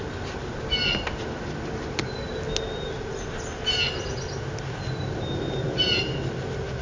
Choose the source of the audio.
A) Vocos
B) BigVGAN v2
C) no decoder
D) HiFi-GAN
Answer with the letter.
C